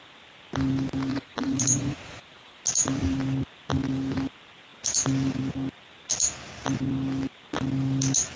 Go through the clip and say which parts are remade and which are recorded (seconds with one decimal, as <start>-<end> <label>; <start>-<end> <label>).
0.0-1.1 recorded; 1.1-2.6 remade; 2.6-8.4 recorded